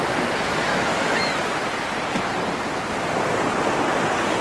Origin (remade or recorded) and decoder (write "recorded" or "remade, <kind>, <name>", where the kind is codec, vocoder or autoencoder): recorded